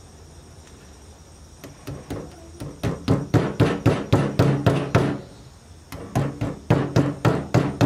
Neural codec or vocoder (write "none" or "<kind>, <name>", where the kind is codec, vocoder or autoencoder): none